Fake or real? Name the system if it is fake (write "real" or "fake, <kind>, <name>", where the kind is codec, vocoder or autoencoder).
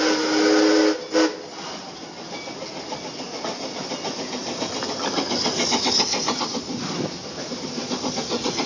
real